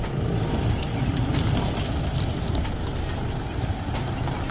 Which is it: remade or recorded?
recorded